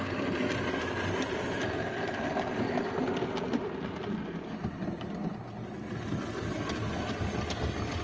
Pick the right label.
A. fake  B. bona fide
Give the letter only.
B